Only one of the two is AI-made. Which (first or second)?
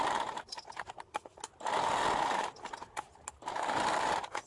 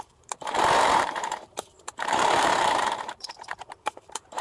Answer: second